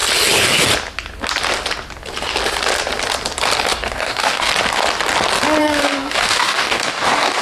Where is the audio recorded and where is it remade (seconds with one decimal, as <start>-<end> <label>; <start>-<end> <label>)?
0.0-3.7 recorded; 3.7-4.5 remade; 4.5-5.6 recorded; 5.6-7.4 remade